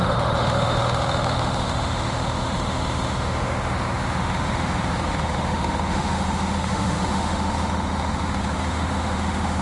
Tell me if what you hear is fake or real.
fake